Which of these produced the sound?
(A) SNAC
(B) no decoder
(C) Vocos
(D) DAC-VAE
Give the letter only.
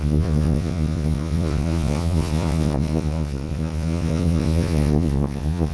C